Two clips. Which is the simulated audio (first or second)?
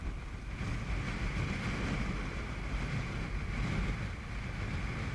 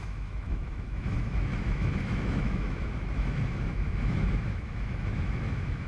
second